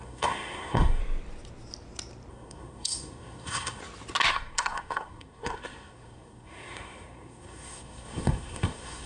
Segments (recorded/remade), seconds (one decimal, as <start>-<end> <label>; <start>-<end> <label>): 0.0-1.0 remade; 1.0-2.3 recorded; 2.3-3.8 remade; 3.8-4.3 recorded; 4.3-9.1 remade